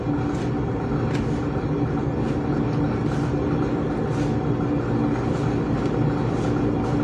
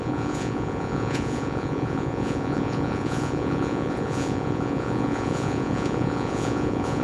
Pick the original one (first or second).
first